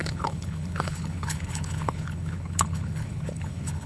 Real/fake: fake